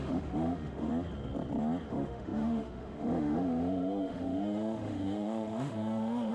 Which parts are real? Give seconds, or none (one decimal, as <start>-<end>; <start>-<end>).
0.9-1.9